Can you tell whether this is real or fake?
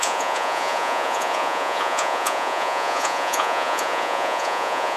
fake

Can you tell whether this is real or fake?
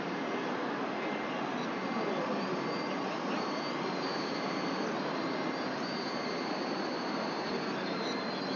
real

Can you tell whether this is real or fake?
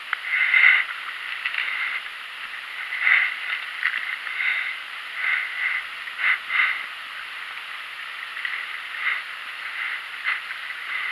real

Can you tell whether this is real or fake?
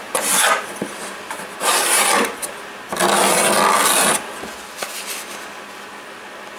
real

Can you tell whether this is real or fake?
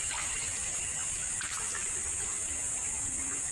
real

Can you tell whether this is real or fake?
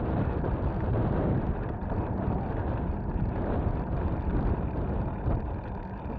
real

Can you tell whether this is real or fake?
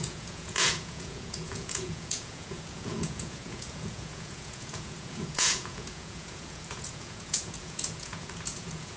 fake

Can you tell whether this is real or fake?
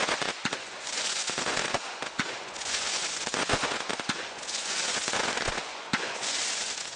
fake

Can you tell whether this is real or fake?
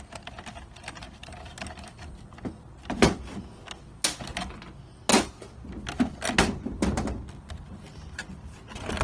real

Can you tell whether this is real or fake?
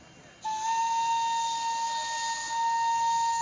real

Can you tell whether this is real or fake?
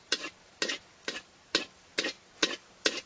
real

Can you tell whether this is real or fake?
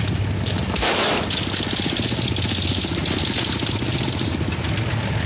real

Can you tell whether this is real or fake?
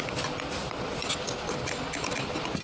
real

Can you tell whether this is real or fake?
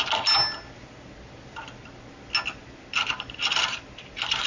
real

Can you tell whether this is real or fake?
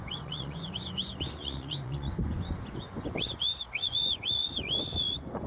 fake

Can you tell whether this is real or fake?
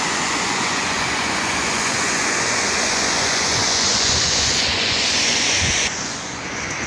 fake